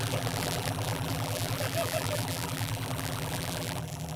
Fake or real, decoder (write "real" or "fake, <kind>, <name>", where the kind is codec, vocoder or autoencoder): fake, vocoder, BigVGAN v2